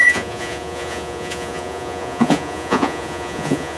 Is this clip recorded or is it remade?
remade